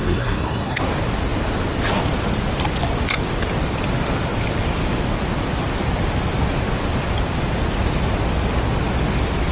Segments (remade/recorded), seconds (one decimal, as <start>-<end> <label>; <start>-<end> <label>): 0.0-0.8 remade; 0.8-9.5 recorded